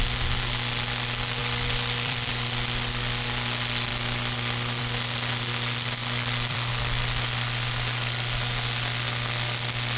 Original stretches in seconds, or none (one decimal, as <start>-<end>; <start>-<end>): 0.0-1.4; 2.3-3.9; 4.8-6.0; 6.7-10.0